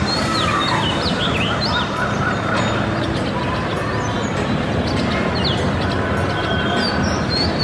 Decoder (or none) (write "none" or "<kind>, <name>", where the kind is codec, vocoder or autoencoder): none